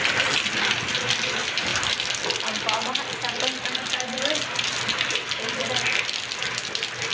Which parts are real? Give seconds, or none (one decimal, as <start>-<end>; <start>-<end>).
0.0-7.1